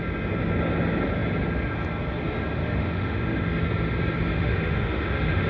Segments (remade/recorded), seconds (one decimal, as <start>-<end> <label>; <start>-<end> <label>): 0.0-2.6 recorded; 2.6-3.5 remade; 3.5-4.3 recorded; 4.3-5.5 remade